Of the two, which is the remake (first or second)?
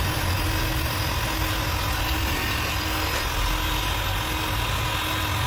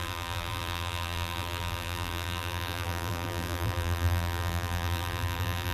second